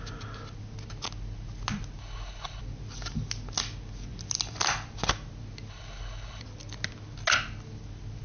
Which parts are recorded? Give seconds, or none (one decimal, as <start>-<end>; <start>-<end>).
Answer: 0.0-2.0; 2.6-5.7; 6.4-8.2